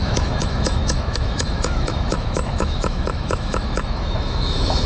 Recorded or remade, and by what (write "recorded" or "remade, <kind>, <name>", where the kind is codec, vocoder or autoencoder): remade, autoencoder, DAC-VAE